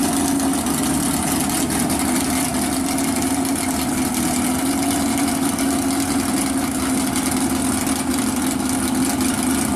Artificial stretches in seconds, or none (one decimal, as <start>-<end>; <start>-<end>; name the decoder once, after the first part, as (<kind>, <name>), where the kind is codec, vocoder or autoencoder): none